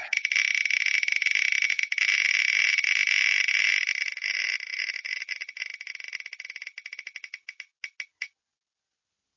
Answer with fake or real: real